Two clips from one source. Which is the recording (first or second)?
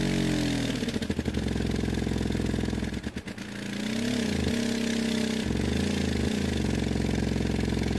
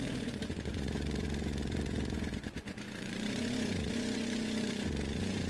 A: first